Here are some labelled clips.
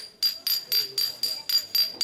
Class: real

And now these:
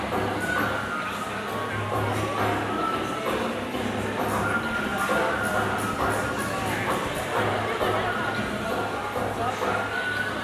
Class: real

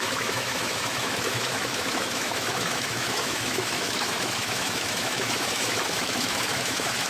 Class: fake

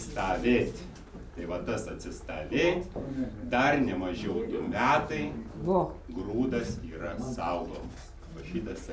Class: real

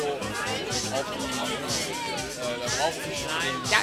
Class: real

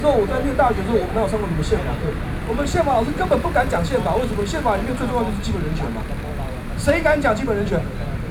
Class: real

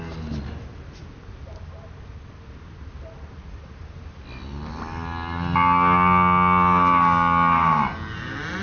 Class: real